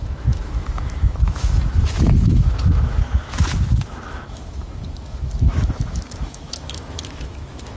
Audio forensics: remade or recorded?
remade